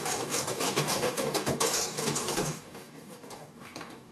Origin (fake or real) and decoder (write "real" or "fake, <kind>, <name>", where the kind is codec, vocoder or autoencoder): fake, codec, DAC